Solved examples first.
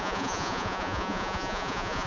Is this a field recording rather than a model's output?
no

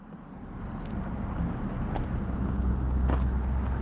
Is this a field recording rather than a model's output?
yes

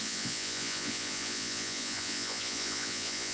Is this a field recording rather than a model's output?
no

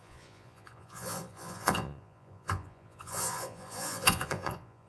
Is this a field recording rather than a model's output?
no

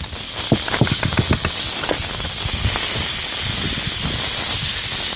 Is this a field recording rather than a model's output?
yes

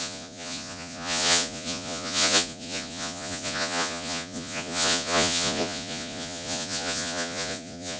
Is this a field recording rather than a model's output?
no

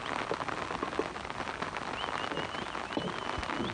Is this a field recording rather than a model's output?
yes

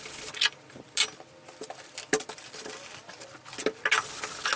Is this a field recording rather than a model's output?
yes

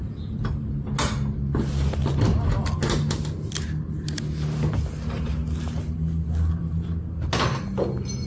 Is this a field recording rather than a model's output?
yes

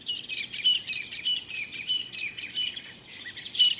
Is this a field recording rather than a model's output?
yes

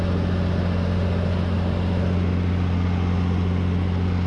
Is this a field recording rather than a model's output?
yes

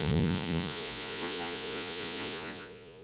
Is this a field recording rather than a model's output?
no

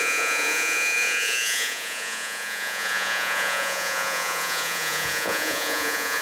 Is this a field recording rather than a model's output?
no